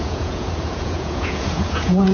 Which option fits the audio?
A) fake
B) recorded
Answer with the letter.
A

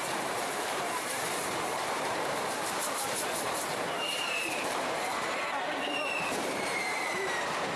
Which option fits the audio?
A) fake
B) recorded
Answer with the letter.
A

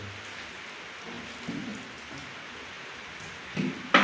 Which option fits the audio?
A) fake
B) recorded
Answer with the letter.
B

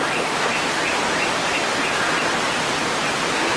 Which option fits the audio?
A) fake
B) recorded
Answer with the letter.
B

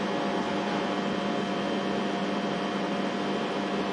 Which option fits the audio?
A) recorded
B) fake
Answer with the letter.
A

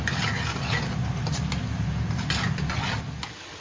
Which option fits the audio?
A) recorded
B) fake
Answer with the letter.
A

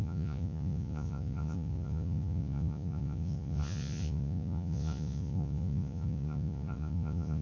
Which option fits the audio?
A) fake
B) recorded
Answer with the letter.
A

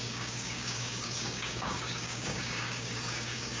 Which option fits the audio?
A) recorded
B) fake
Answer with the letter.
B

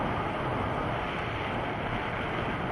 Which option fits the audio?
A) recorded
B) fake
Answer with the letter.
A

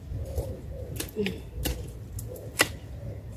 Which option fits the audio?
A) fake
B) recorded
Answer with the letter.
B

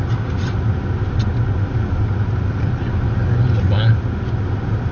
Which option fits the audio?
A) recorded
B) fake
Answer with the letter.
A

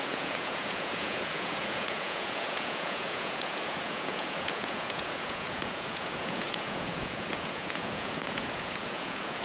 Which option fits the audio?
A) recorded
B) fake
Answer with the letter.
B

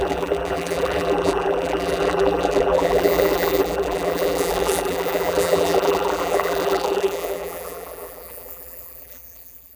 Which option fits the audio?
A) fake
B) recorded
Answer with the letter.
A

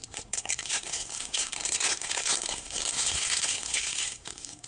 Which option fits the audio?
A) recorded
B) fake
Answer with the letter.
B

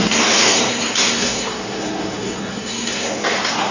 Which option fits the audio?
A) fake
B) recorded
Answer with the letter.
A